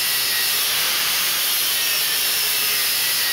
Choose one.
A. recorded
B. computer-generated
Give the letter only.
B